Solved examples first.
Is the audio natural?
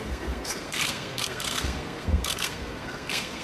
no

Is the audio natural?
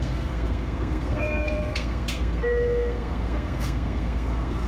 no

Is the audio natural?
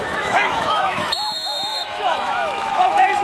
no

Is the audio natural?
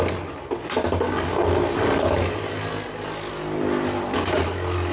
yes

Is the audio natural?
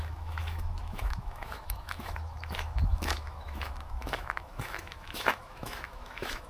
no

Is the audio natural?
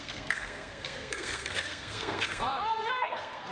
no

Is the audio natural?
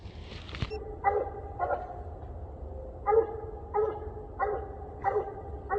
yes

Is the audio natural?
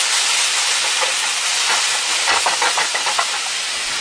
yes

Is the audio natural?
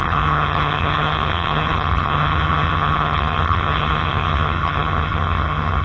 no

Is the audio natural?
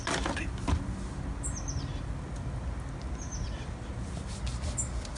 yes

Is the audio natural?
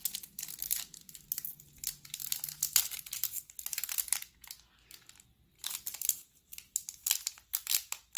yes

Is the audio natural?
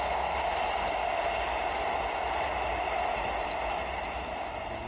yes